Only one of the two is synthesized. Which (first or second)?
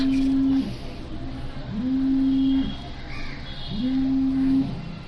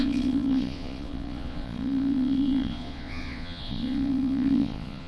second